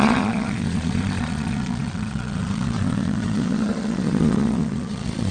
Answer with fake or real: fake